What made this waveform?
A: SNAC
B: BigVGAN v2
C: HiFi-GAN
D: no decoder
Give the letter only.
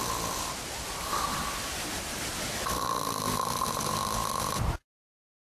D